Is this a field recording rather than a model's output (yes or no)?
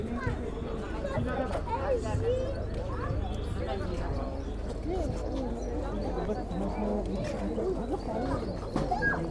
yes